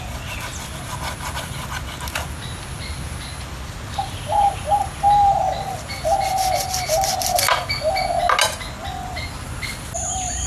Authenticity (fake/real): real